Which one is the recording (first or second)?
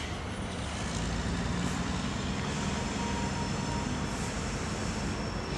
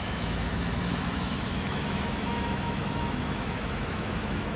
first